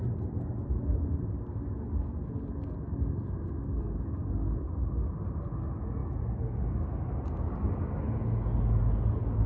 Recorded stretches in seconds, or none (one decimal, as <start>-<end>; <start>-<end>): 0.0-9.5